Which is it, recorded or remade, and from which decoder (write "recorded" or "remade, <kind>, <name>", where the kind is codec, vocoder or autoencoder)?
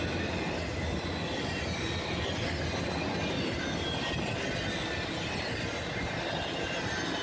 recorded